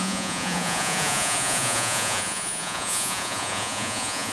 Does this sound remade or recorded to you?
remade